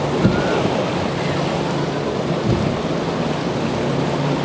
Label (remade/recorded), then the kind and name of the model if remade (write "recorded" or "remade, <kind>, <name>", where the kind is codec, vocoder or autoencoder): recorded